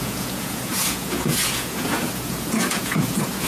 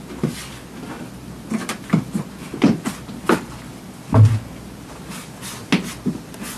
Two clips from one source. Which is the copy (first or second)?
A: first